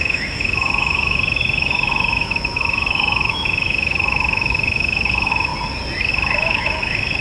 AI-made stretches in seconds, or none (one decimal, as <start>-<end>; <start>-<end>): 0.0-5.5; 6.1-7.2